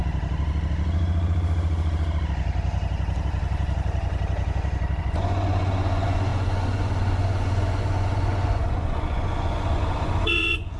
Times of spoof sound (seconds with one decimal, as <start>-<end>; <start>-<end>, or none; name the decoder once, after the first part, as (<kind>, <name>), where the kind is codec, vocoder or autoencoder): 5.0-10.8 (vocoder, Vocos)